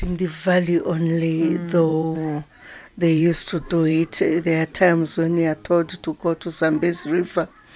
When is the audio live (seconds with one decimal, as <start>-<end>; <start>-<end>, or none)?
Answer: 0.0-1.9; 4.1-6.2